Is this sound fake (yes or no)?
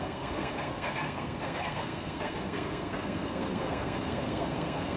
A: yes